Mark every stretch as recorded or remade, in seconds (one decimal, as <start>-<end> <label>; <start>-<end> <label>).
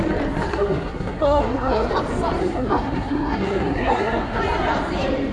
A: 0.0-0.5 recorded; 0.5-1.9 remade; 1.9-2.4 recorded; 2.4-4.4 remade; 4.4-5.3 recorded